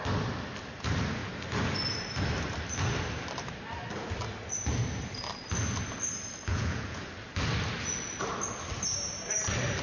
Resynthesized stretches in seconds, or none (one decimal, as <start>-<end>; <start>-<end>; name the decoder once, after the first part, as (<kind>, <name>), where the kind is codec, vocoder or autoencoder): 6.5-7.1 (vocoder, Vocos)